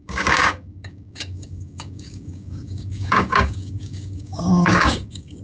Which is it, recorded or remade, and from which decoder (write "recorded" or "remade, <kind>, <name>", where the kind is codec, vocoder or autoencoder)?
remade, codec, DAC